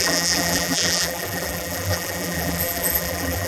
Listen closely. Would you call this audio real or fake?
fake